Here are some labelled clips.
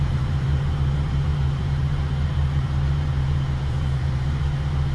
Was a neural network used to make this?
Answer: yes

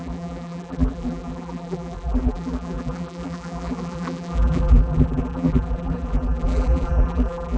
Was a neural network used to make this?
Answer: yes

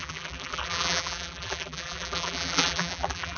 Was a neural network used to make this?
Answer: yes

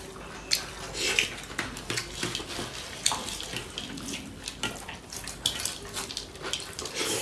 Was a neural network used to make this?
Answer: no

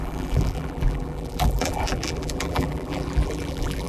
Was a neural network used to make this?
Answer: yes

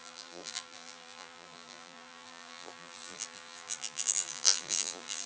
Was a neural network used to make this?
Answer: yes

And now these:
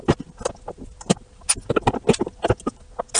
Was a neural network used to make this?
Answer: no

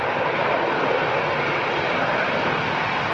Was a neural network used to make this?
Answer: no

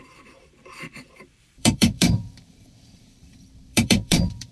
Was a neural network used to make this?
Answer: yes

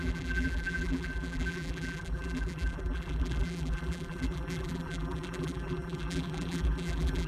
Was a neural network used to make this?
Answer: yes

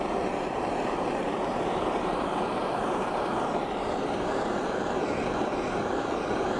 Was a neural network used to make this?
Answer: yes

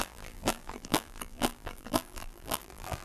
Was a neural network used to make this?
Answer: yes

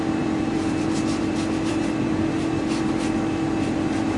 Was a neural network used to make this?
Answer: yes